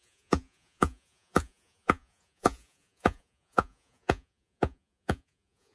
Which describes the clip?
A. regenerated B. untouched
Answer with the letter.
A